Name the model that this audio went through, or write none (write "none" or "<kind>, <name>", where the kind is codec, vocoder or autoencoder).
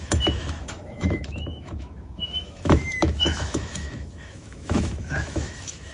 autoencoder, DAC-VAE